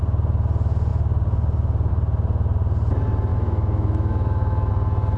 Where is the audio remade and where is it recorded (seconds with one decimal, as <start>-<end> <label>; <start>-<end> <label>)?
0.0-3.3 recorded; 3.3-4.7 remade; 4.7-5.2 recorded